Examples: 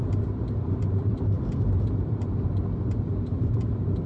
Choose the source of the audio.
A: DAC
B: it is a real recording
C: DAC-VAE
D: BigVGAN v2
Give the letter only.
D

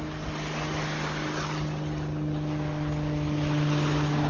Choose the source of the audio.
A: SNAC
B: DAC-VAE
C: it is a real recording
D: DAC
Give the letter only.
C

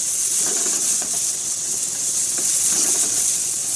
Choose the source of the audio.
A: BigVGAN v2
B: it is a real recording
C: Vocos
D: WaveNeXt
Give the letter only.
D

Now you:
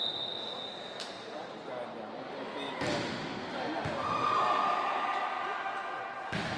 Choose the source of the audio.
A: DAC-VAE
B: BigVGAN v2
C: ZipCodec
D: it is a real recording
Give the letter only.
D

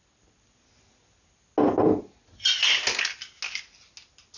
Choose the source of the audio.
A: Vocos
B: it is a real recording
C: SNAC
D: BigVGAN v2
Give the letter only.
B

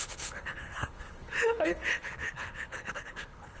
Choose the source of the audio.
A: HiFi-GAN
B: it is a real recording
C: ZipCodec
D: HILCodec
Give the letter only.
D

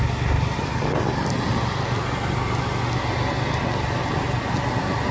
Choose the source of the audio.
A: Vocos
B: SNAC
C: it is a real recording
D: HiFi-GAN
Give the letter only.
C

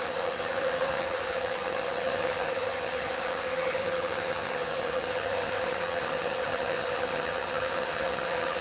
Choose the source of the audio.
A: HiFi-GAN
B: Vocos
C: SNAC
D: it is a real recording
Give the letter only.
A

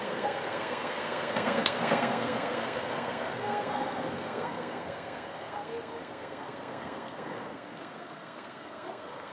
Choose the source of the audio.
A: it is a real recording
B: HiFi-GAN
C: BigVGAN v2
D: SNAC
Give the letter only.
D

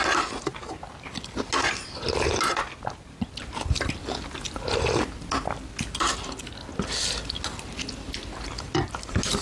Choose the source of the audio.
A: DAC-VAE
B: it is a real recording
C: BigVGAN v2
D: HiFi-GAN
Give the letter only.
B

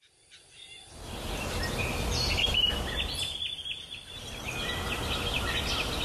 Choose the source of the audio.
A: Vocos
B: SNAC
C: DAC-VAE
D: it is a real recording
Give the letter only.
D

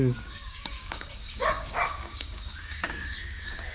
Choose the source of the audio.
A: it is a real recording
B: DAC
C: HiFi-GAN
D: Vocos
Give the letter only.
B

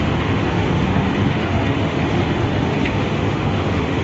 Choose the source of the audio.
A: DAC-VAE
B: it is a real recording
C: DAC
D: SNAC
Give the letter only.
A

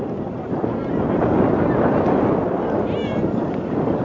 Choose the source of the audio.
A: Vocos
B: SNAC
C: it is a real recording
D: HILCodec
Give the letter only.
C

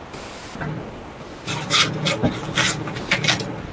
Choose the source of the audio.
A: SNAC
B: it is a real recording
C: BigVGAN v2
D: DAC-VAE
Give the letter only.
B